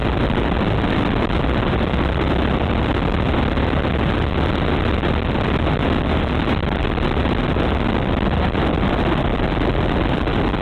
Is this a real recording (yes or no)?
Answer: no